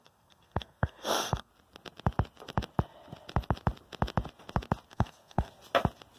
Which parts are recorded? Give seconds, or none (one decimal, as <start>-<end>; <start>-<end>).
1.5-4.9; 5.5-6.2